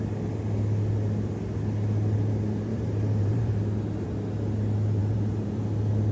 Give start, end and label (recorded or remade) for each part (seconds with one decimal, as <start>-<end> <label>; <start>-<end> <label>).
0.0-2.7 recorded; 2.7-3.5 remade; 3.5-5.0 recorded; 5.0-5.6 remade; 5.6-6.1 recorded

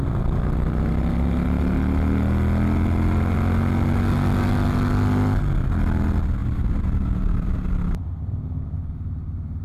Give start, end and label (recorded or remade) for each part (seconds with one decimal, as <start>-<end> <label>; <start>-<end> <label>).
0.0-6.4 recorded; 6.4-7.5 remade; 7.5-9.6 recorded

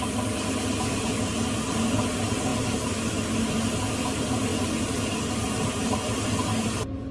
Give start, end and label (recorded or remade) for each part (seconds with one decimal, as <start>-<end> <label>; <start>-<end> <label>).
0.0-7.1 recorded

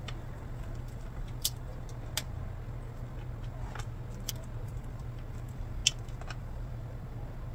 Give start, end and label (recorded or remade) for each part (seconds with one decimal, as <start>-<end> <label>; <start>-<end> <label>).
0.0-1.7 remade; 1.7-4.6 recorded; 4.6-5.8 remade; 5.8-6.4 recorded; 6.4-7.5 remade

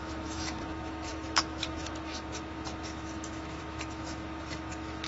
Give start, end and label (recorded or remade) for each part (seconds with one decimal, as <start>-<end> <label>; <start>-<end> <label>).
0.0-5.1 remade

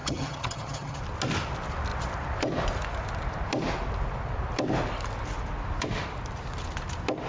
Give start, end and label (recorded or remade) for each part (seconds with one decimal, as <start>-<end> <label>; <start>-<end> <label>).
0.0-1.0 remade; 1.0-7.3 recorded

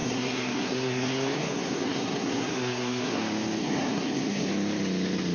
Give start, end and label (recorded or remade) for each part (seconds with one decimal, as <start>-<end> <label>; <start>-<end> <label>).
0.0-3.2 remade; 3.2-3.6 recorded; 3.6-4.5 remade; 4.5-5.3 recorded

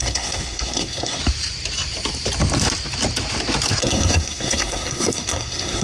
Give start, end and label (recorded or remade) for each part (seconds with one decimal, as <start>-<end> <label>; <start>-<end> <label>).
0.0-1.2 remade; 1.2-3.8 recorded; 3.8-5.8 remade